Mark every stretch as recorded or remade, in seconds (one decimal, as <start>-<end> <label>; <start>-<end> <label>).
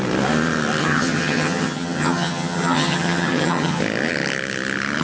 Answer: 0.0-0.8 recorded; 0.8-3.8 remade; 3.8-5.0 recorded